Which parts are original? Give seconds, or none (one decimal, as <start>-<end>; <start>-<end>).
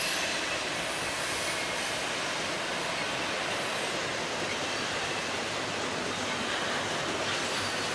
0.0-2.2; 3.4-4.1; 5.4-7.9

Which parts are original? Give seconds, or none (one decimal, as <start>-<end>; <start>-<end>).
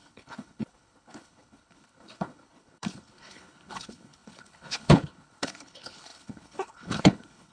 none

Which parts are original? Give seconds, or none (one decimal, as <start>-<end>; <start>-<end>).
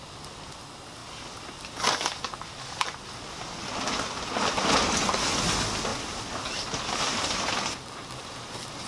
0.0-8.2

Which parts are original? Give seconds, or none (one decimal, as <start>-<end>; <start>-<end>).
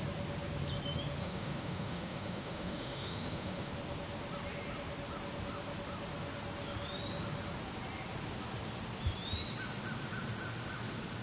0.0-1.2; 3.7-11.2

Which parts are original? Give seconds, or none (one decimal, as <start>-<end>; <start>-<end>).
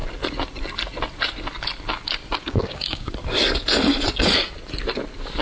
0.0-2.4; 3.1-5.4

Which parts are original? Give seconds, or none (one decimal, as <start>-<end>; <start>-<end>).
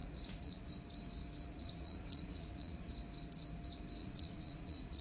0.7-1.5; 2.9-4.0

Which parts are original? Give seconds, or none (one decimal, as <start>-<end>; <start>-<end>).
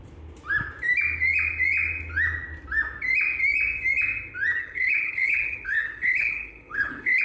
0.0-4.6